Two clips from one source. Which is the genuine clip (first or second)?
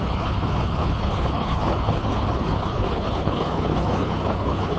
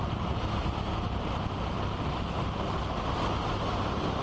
second